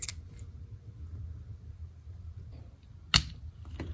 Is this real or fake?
real